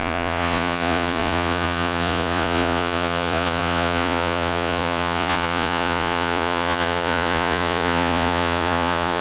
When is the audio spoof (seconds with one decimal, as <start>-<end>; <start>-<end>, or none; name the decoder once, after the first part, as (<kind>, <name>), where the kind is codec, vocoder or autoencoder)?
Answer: 0.0-9.2 (vocoder, Vocos)